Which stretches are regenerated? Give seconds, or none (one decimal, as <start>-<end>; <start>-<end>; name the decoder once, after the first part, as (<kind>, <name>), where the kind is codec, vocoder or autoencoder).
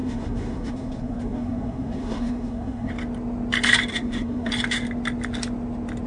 0.0-2.9 (codec, SNAC); 3.9-4.5